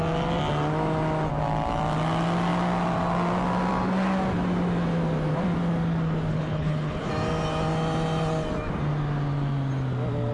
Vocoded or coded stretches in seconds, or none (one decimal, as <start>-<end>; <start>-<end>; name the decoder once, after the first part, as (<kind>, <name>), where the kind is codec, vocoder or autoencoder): 6.3-7.1 (codec, HILCodec)